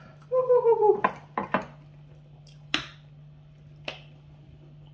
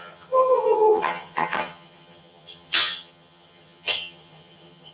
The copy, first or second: second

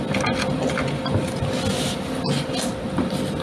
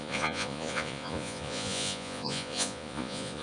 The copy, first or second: second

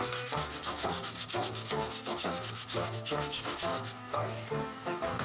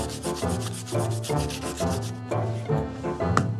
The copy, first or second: first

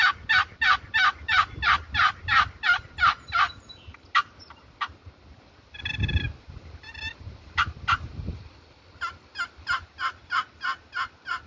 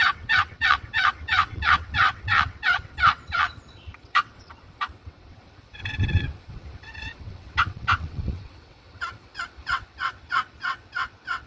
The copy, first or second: second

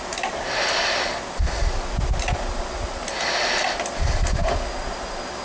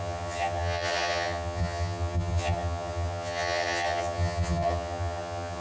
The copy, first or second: second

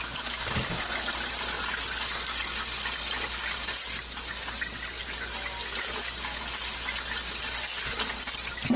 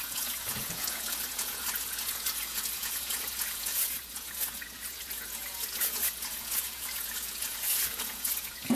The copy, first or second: second